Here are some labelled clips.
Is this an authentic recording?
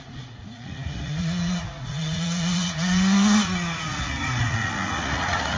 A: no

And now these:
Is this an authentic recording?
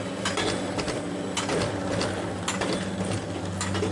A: yes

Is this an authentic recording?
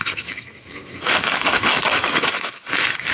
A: no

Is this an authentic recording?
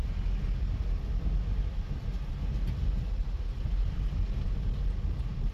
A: yes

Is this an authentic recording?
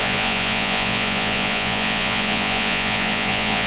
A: no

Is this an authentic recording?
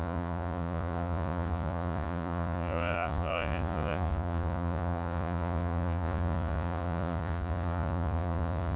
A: no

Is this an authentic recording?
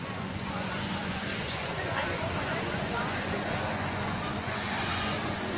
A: no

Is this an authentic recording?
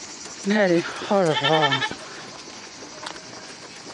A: no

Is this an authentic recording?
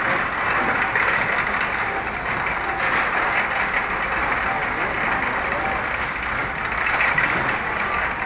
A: yes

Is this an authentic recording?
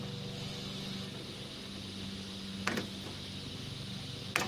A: yes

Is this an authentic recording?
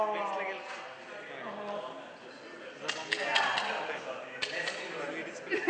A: yes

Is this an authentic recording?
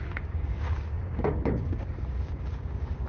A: no